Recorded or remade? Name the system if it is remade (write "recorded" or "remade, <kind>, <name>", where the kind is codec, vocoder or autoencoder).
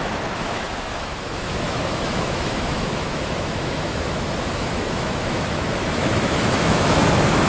remade, autoencoder, DAC-VAE